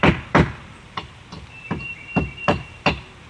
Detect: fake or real fake